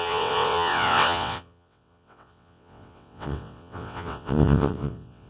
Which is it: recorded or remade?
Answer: remade